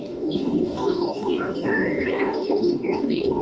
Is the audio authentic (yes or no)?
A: no